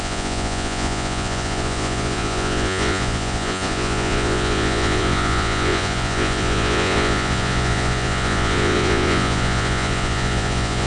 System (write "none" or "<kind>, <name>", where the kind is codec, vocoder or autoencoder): vocoder, Vocos